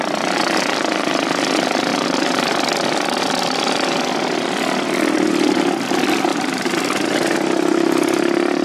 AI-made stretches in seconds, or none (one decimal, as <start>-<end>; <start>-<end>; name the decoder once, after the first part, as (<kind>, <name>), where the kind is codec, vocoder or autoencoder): 6.3-6.8 (vocoder, BigVGAN v2)